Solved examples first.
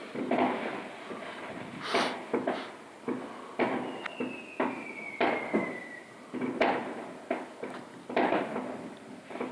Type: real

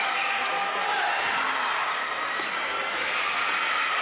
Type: real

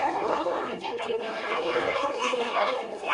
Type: fake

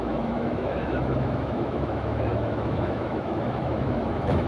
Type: fake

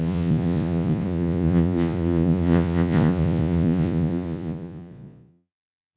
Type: fake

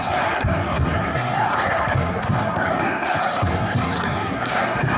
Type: fake